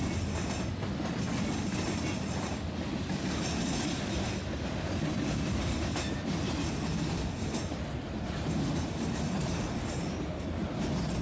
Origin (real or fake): real